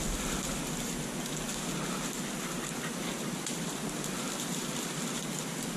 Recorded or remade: recorded